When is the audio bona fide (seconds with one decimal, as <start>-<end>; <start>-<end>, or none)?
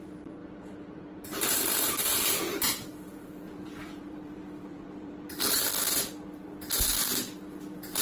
5.6-8.0